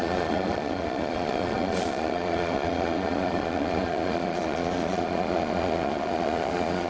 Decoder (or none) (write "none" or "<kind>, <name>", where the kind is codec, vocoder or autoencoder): vocoder, Vocos